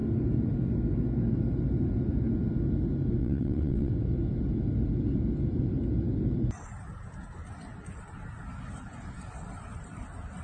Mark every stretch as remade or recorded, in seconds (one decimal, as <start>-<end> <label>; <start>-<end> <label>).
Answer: 0.0-3.2 recorded; 3.2-3.9 remade; 3.9-10.4 recorded